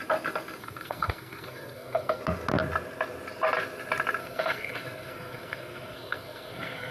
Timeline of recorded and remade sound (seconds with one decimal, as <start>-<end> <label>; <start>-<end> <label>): 0.0-0.6 recorded; 0.6-2.2 remade; 2.2-4.2 recorded; 4.2-6.9 remade